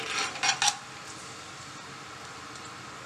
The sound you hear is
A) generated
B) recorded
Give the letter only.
B